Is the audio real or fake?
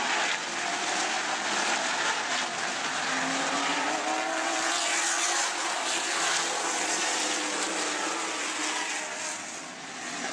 real